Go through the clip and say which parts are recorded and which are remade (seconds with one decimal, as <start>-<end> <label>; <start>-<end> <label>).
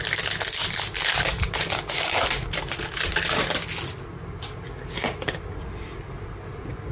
0.0-6.9 recorded